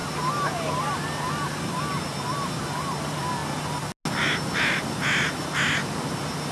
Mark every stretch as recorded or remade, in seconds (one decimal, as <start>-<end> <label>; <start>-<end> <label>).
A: 0.0-6.5 recorded